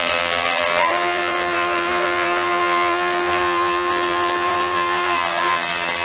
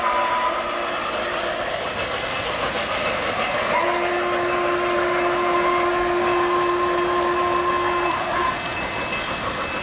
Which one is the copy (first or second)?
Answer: first